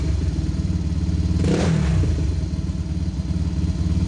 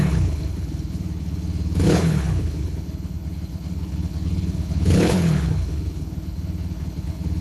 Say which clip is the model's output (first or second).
second